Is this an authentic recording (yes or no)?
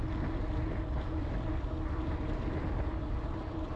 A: no